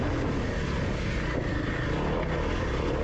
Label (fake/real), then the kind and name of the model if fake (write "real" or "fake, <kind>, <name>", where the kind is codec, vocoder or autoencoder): real